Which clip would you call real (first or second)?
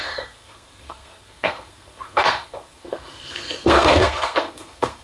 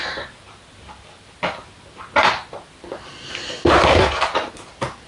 second